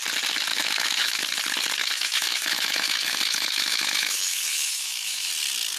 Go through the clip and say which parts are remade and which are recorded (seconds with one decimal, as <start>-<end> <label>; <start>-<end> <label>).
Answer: 0.0-0.5 recorded; 0.5-1.2 remade; 1.2-1.8 recorded; 1.8-5.3 remade; 5.3-5.8 recorded